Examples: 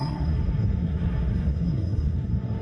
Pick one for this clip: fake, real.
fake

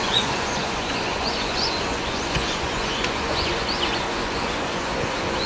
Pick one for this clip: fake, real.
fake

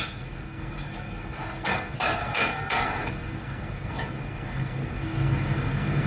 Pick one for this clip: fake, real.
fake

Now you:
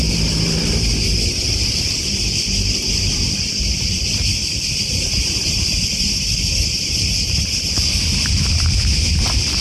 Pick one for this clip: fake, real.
fake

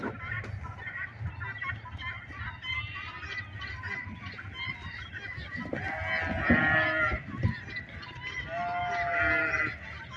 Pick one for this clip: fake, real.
real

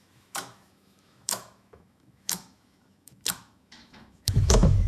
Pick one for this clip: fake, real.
fake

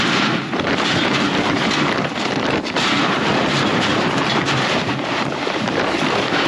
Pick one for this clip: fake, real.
fake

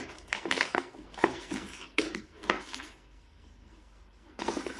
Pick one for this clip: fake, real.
fake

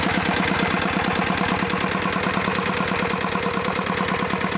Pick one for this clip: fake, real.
real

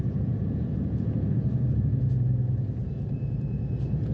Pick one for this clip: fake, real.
fake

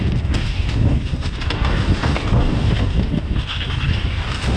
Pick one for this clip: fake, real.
fake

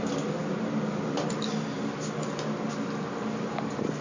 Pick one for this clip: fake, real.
real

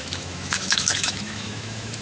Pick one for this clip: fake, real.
fake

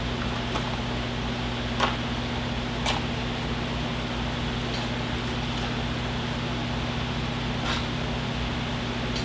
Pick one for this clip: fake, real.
real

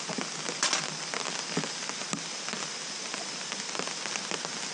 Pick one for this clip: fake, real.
real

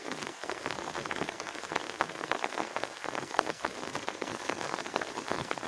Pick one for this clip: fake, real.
fake